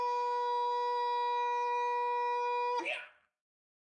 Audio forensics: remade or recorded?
recorded